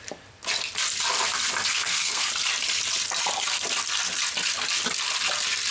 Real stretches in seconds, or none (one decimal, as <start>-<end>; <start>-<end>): 0.0-1.7; 2.3-5.7